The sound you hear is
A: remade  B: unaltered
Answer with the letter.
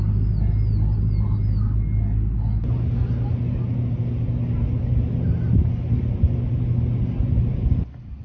B